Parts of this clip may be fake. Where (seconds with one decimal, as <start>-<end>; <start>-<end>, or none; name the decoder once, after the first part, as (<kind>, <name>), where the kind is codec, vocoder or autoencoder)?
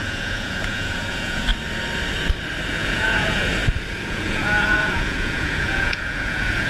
0.0-1.5 (vocoder, Vocos); 2.7-3.6; 4.1-6.7